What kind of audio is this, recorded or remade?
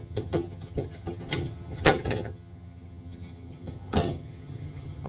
remade